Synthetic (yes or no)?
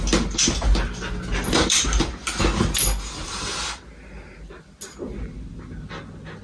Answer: no